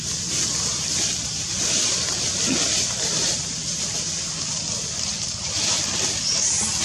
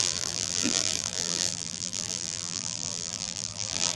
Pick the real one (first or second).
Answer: first